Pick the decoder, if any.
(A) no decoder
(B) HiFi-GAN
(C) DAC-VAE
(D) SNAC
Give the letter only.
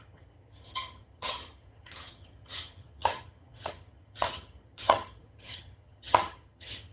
B